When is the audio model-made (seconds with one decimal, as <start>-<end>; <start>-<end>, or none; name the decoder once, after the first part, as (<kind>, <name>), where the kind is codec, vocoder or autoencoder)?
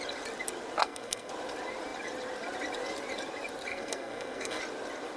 0.8-1.3 (codec, SNAC); 3.7-4.6